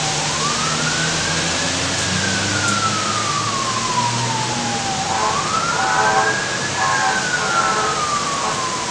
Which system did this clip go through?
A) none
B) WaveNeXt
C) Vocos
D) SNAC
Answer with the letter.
A